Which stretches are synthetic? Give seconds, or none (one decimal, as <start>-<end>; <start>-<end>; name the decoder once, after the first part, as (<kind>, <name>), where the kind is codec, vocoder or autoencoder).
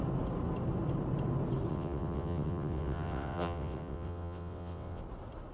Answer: 1.7-5.0 (vocoder, WaveNeXt)